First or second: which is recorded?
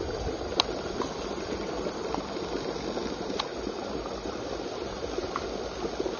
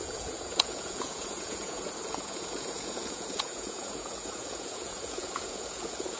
first